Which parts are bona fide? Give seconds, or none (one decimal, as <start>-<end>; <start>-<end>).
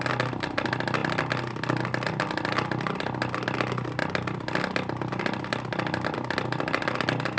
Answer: 0.0-7.4